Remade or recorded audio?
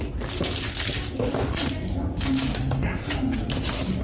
recorded